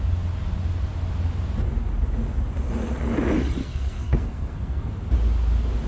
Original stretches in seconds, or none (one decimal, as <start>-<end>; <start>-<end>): 0.0-3.6; 4.9-5.9